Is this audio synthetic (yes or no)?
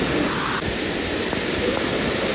no